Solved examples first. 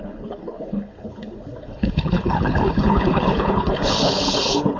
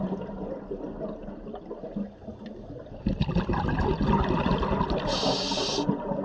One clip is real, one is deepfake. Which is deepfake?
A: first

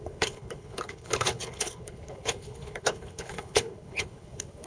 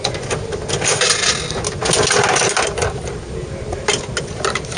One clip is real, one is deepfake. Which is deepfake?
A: first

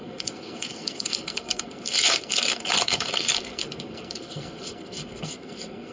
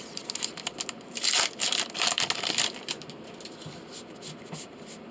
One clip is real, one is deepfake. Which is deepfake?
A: first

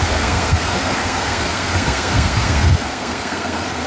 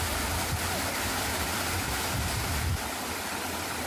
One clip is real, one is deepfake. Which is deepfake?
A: first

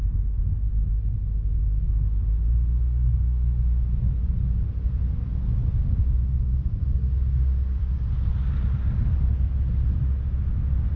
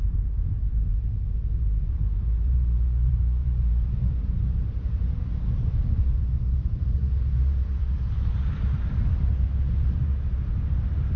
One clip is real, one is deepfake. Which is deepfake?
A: second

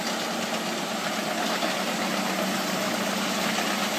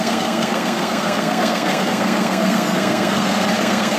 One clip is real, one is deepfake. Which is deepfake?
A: second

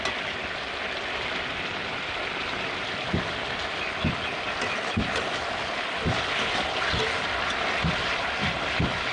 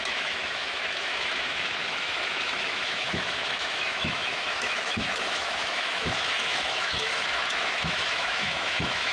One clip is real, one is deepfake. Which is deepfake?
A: second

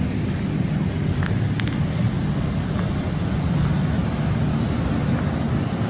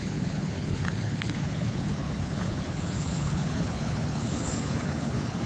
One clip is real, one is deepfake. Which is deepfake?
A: second